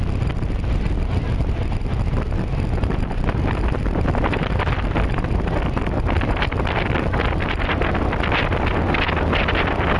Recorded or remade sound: remade